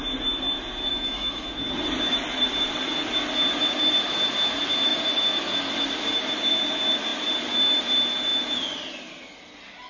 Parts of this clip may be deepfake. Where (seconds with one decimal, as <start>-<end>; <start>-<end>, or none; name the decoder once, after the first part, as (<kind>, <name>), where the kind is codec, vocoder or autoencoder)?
0.9-1.5 (autoencoder, DAC-VAE)

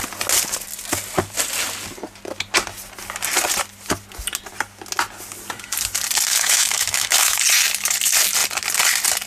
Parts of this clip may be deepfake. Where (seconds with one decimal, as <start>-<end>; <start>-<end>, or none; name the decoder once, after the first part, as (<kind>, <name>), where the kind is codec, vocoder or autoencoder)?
6.3-7.4 (autoencoder, DAC-VAE)

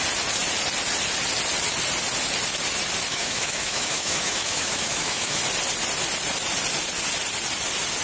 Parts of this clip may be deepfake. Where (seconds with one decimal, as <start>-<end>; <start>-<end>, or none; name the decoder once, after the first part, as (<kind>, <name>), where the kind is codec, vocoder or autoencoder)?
3.1-5.4 (autoencoder, DAC-VAE)

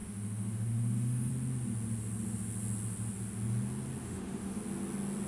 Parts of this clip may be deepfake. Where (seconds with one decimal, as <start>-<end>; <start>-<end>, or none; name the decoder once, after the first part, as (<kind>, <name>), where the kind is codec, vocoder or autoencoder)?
0.0-1.3 (autoencoder, DAC-VAE); 4.0-4.6

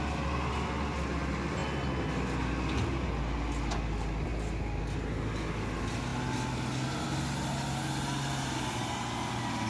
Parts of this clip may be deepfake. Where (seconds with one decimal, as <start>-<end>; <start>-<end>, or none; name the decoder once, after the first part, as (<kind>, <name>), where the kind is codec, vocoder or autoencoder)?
none

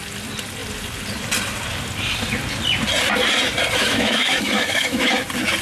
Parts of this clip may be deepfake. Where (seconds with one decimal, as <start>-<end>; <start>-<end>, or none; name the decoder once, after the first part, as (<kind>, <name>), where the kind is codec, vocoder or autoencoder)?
3.8-5.1 (autoencoder, DAC-VAE)

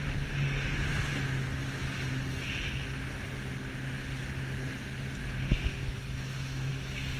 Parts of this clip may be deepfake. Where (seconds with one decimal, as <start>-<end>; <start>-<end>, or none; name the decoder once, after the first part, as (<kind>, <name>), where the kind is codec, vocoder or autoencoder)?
5.7-6.7 (autoencoder, DAC-VAE)